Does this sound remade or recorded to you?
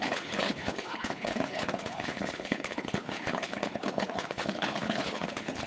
remade